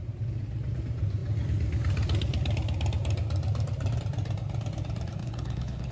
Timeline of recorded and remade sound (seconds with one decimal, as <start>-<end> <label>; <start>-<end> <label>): 0.0-5.2 recorded; 5.2-5.9 remade